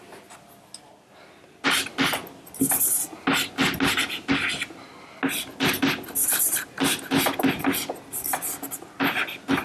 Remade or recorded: recorded